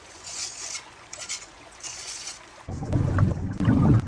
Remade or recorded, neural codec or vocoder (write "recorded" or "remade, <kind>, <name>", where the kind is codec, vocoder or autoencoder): remade, vocoder, Vocos